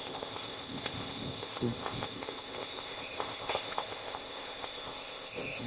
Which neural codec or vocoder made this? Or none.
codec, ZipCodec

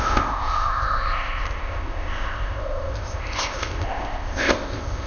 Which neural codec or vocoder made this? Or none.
codec, ZipCodec